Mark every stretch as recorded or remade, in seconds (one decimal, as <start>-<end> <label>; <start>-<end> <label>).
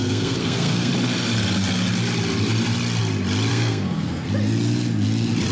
0.0-0.9 remade; 0.9-3.5 recorded; 3.5-4.3 remade; 4.3-5.5 recorded